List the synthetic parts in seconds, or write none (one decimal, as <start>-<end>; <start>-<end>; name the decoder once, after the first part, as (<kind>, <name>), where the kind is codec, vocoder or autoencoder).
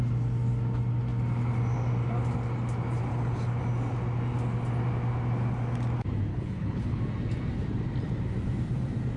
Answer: 3.1-3.6 (codec, HILCodec); 6.3-7.0